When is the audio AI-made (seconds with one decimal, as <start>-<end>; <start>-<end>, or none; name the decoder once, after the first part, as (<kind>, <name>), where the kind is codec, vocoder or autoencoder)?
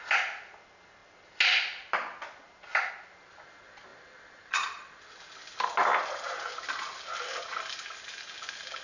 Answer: none